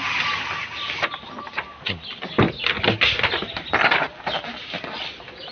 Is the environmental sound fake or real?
real